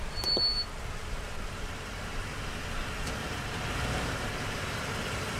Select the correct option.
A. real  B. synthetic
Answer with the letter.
B